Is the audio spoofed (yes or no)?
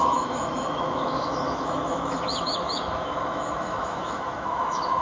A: yes